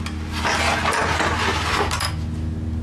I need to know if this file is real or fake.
real